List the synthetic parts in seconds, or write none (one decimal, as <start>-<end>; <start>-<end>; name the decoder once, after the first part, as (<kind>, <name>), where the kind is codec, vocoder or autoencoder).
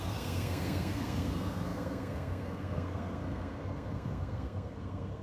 0.0-5.2 (codec, SNAC)